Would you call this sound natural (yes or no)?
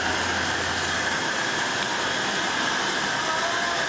yes